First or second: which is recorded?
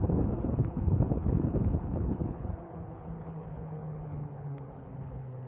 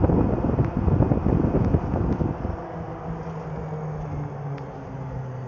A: second